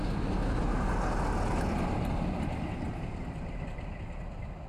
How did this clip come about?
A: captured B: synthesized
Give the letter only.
A